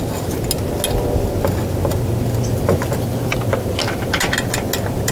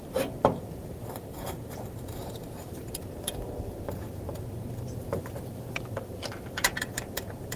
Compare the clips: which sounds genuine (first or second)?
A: first